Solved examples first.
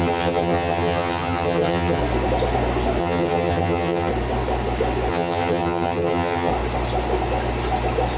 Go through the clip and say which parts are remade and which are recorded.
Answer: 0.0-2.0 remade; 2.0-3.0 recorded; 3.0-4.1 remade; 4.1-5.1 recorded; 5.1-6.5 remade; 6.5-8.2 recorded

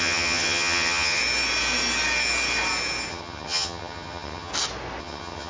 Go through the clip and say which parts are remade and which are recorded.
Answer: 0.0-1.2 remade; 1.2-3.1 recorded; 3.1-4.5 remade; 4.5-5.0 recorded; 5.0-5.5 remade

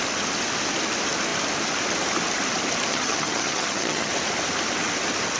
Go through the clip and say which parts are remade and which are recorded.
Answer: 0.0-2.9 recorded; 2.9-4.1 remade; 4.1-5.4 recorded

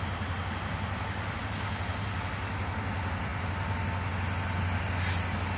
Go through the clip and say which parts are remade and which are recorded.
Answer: 0.0-5.6 recorded

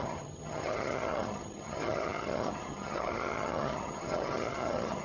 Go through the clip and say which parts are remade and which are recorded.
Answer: 0.0-5.0 remade

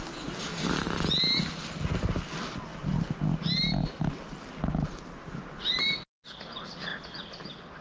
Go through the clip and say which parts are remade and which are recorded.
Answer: 0.0-7.8 recorded

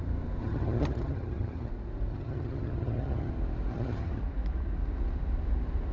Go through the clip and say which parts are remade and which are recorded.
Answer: 0.0-0.4 recorded; 0.4-1.7 remade; 1.7-2.1 recorded; 2.1-3.3 remade; 3.3-3.7 recorded; 3.7-4.2 remade; 4.2-5.9 recorded

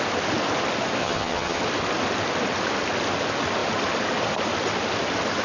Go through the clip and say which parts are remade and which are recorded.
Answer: 0.0-1.0 recorded; 1.0-1.6 remade; 1.6-5.4 recorded